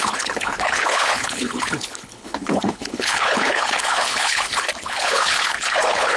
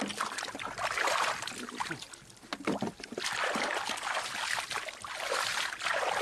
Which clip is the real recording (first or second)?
second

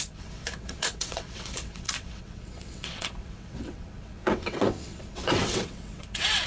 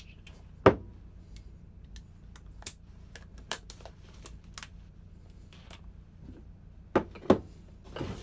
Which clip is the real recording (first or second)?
second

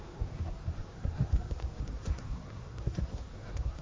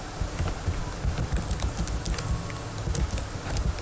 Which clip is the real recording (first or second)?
second